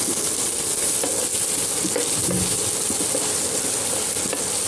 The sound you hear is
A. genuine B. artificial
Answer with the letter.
A